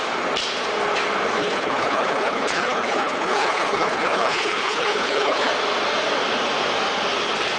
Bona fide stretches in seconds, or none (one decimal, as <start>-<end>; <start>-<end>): 0.0-1.4; 5.5-7.6